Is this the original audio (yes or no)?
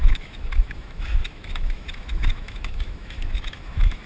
no